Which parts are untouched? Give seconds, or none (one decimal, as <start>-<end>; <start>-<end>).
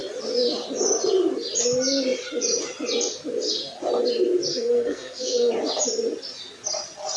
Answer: 0.0-4.5; 5.5-7.2